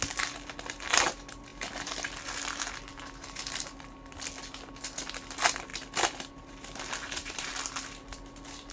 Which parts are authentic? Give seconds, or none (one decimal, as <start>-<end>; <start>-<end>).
0.0-7.0; 7.5-8.7